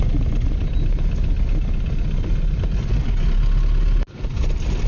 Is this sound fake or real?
real